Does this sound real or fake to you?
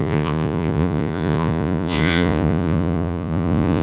fake